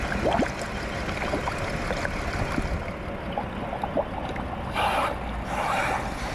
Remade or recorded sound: recorded